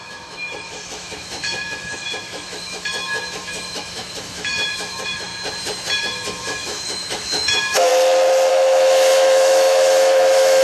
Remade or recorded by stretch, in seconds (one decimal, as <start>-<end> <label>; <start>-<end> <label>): 0.0-5.3 remade; 5.3-6.0 recorded; 6.0-7.9 remade; 7.9-8.5 recorded; 8.5-10.6 remade